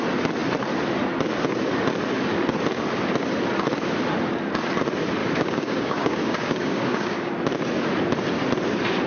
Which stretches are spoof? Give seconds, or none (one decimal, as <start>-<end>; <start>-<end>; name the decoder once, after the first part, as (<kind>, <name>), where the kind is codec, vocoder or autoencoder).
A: 5.2-7.3 (codec, DAC)

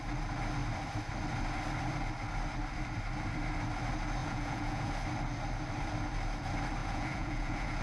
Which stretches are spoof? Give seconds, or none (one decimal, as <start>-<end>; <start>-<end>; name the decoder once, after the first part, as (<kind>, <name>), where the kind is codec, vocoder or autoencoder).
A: 4.2-4.9 (vocoder, Vocos); 6.8-7.8

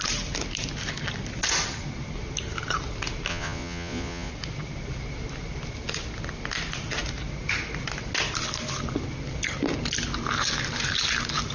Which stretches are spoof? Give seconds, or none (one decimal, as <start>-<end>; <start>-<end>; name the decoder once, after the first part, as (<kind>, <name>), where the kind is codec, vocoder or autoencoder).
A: 3.3-4.3 (vocoder, Vocos)

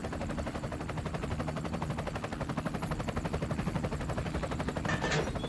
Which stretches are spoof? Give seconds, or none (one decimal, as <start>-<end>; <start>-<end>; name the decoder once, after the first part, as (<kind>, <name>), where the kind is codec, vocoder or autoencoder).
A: 0.0-1.9 (vocoder, BigVGAN v2)

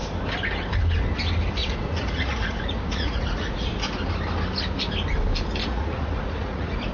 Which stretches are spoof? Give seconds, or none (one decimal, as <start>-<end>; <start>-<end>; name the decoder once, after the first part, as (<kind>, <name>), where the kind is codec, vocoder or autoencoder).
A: 1.6-3.7 (vocoder, Vocos); 5.6-6.9

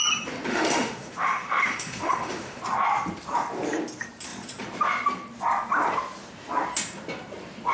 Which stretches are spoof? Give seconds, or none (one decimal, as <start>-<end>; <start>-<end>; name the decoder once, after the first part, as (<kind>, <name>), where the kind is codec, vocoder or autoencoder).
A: 0.5-2.6 (autoencoder, DAC-VAE)

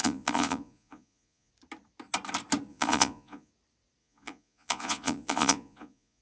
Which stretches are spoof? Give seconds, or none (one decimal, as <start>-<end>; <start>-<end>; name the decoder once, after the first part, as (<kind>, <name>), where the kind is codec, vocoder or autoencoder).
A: 0.0-1.5 (vocoder, Vocos); 2.7-3.5; 4.0-6.2

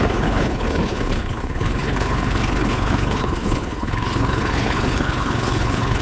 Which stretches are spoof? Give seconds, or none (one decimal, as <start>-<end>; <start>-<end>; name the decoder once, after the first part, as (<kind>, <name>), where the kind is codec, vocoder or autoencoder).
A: 0.0-6.0 (codec, HILCodec)